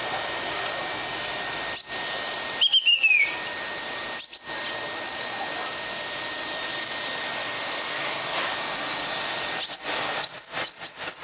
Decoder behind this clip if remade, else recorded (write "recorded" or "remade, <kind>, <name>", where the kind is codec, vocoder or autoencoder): recorded